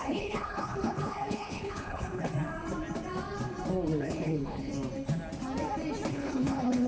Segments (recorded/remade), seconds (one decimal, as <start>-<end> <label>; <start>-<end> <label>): 0.0-2.3 remade; 2.3-4.0 recorded; 4.0-4.7 remade; 4.7-6.1 recorded; 6.1-6.9 remade